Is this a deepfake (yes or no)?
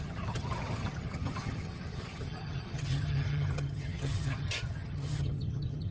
yes